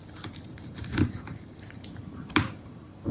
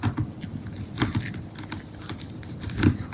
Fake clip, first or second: first